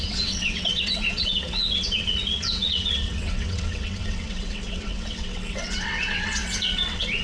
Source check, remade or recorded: remade